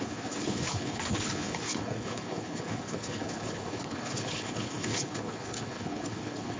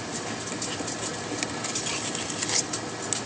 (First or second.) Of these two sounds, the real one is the second